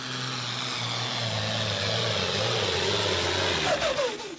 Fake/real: real